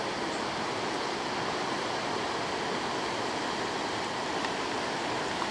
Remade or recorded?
recorded